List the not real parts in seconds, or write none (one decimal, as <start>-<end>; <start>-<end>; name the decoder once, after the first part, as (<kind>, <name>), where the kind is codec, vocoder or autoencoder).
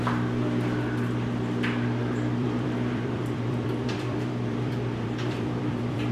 2.0-6.1 (vocoder, BigVGAN v2)